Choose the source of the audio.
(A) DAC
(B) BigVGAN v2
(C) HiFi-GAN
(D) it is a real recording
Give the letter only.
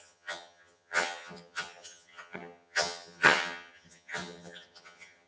C